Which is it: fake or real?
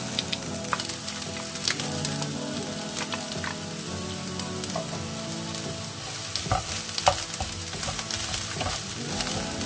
real